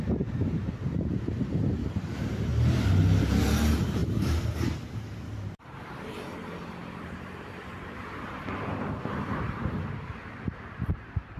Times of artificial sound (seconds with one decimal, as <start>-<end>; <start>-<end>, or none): 0.0-2.5; 3.4-11.4